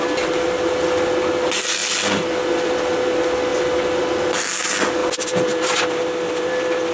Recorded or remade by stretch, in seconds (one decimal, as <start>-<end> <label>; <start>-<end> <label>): 0.0-6.9 recorded

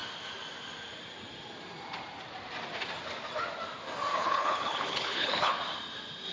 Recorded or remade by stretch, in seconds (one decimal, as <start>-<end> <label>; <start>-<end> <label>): 0.0-4.1 recorded; 4.1-5.5 remade; 5.5-6.3 recorded